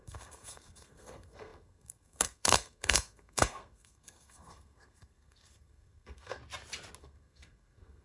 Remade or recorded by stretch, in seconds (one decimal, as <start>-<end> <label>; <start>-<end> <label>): 0.0-6.4 remade; 6.4-7.0 recorded; 7.0-8.0 remade